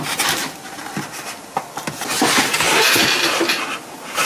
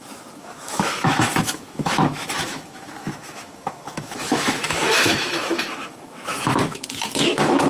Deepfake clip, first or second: second